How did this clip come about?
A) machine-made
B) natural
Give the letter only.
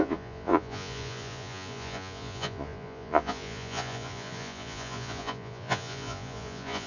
A